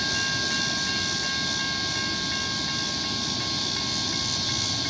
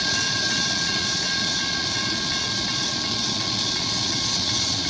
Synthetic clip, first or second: second